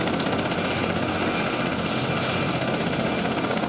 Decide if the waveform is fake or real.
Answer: real